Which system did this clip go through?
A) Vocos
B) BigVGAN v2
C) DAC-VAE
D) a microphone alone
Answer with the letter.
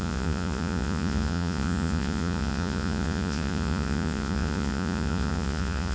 A